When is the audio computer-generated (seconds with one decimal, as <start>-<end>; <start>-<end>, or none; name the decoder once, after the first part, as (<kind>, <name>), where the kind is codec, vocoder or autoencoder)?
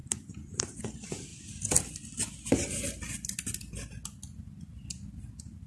0.0-0.8 (vocoder, BigVGAN v2)